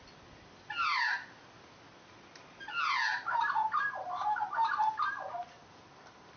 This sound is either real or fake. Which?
real